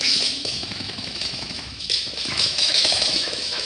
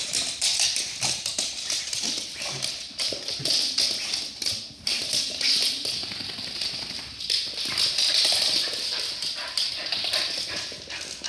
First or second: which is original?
second